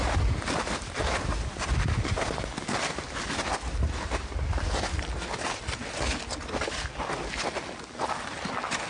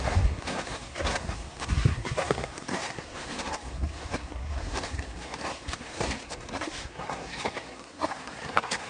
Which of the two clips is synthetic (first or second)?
second